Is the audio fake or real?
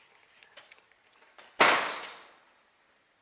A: real